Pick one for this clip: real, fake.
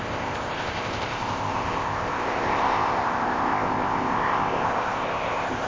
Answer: fake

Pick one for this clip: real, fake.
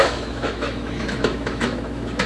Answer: fake